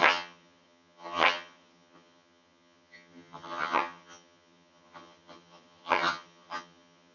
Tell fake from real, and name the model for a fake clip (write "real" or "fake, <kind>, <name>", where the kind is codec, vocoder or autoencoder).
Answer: fake, vocoder, HiFi-GAN